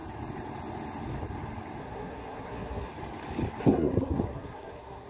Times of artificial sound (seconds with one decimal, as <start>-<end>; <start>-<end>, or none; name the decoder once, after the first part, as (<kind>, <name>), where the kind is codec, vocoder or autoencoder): 1.8-2.9 (codec, SNAC); 3.6-5.1